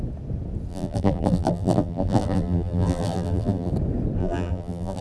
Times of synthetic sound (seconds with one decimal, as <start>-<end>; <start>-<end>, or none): 0.7-3.7; 4.2-5.0